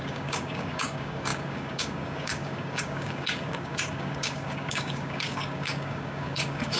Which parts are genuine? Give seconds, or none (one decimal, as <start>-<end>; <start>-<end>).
none